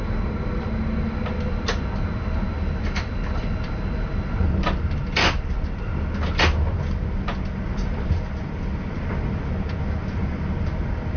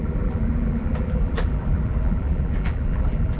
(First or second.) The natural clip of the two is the first